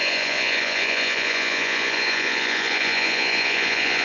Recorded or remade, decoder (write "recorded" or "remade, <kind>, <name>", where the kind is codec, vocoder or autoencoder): remade, vocoder, Vocos